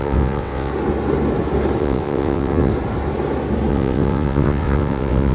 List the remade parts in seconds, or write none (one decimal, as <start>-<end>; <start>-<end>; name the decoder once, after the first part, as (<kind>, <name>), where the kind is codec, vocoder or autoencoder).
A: 0.0-0.7 (vocoder, WaveNeXt); 1.8-2.7; 3.7-5.3